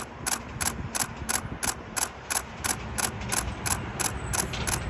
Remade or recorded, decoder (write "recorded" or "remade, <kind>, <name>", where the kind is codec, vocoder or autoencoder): recorded